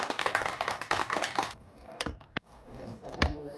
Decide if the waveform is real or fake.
fake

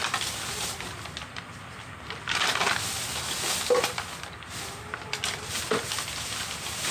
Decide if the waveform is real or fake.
real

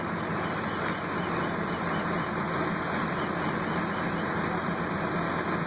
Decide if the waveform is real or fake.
real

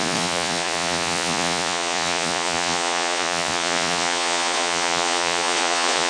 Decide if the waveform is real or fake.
fake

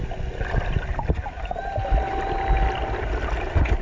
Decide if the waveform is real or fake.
real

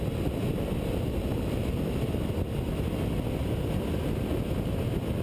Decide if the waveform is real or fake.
real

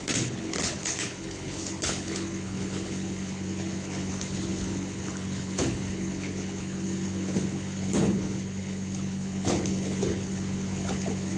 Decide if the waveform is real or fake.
fake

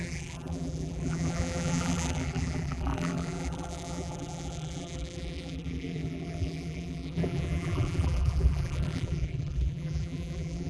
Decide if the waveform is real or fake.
fake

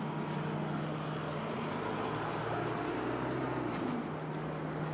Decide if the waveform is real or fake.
real